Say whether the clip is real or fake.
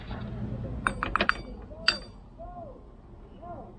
real